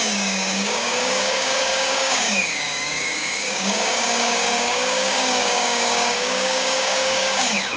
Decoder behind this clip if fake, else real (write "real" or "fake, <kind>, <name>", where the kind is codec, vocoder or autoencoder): fake, codec, DAC